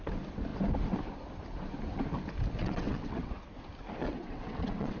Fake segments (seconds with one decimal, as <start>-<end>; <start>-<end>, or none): 2.6-3.3; 4.0-5.0